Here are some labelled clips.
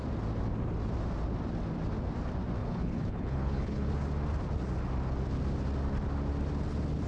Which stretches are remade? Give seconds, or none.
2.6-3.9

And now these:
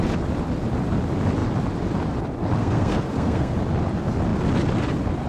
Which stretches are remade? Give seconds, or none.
2.6-3.5

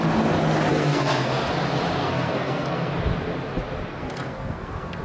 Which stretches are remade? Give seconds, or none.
0.7-1.5; 2.0-2.9; 3.9-5.0